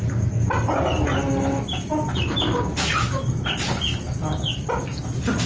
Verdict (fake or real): real